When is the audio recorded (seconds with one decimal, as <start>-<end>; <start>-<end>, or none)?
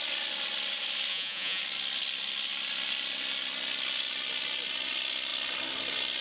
0.0-1.1; 1.6-6.2